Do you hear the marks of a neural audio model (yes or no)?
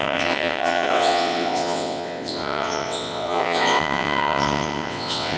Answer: yes